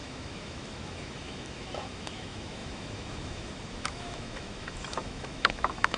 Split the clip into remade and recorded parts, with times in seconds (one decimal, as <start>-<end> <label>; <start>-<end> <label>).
0.0-6.0 remade